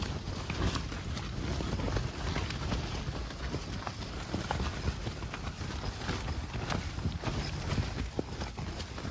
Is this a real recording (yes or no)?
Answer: yes